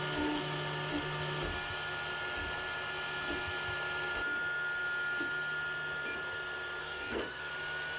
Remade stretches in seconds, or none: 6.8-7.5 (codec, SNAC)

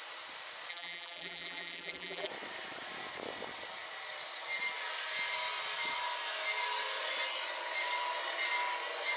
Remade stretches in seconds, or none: 0.7-2.3 (vocoder, BigVGAN v2)

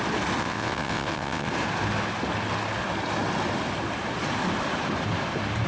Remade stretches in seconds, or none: 0.4-1.5 (vocoder, WaveNeXt)

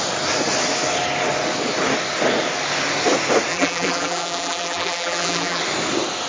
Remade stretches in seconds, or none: 3.5-5.6 (vocoder, BigVGAN v2)

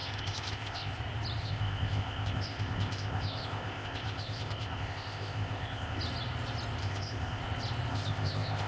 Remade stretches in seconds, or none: 0.0-0.9 (codec, ZipCodec); 1.4-6.0; 6.8-7.4; 7.9-8.7

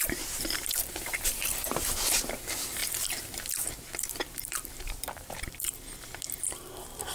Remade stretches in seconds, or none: 0.0-2.8 (vocoder, BigVGAN v2); 3.5-7.1

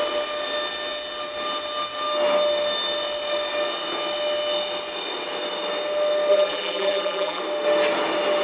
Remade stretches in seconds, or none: 6.3-7.4 (vocoder, BigVGAN v2)

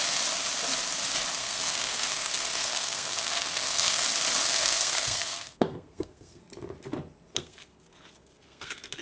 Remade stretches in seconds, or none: 1.4-4.0 (codec, SNAC); 4.4-6.4; 7.3-9.0